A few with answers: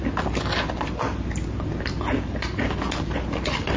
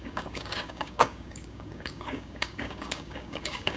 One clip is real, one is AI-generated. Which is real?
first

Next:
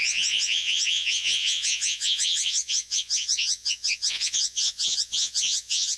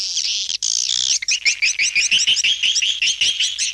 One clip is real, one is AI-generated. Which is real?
second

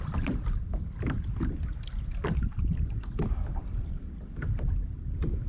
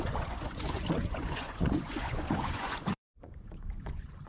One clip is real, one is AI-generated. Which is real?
first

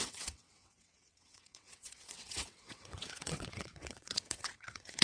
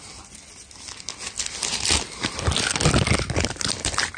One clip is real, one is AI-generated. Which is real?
second